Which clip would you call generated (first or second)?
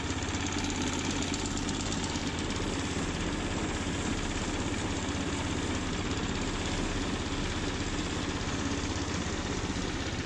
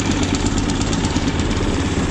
second